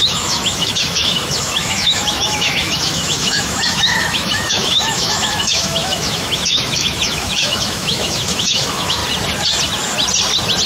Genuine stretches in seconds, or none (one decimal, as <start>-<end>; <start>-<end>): 9.0-10.7